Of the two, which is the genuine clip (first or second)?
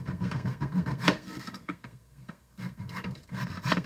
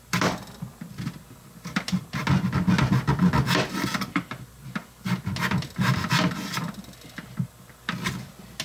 second